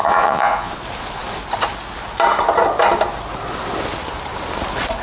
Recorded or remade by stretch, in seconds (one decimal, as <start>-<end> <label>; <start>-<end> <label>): 0.0-0.7 remade; 0.7-5.0 recorded